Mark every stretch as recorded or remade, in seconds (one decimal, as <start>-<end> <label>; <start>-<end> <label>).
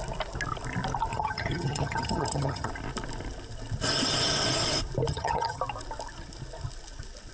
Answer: 0.0-1.1 recorded; 1.1-2.7 remade; 2.7-5.1 recorded; 5.1-5.6 remade; 5.6-7.3 recorded